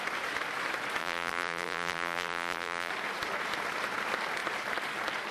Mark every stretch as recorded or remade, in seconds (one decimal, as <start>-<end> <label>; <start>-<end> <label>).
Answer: 0.0-1.0 recorded; 1.0-2.9 remade; 2.9-5.3 recorded